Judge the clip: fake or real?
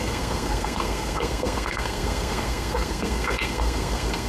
fake